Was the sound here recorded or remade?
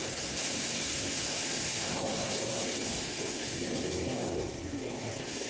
remade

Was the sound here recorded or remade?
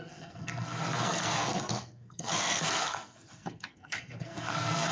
remade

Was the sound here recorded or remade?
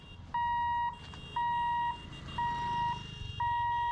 recorded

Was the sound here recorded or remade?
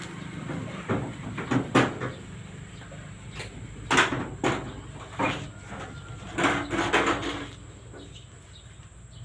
recorded